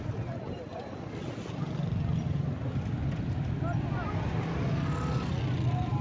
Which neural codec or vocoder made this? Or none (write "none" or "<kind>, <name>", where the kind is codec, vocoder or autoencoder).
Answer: none